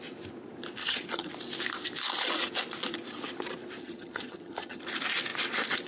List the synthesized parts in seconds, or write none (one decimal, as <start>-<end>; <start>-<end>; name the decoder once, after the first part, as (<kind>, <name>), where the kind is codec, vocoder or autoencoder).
0.8-1.3 (vocoder, HiFi-GAN); 3.8-4.8